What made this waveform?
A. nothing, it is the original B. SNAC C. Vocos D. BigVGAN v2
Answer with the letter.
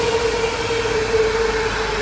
A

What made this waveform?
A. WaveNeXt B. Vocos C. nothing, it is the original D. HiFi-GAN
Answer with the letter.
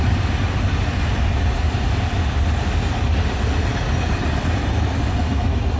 C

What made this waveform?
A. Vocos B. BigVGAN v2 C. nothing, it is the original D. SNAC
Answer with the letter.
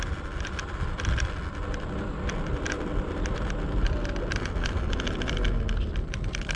B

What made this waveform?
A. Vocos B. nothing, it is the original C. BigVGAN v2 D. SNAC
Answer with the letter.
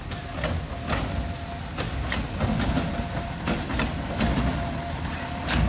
B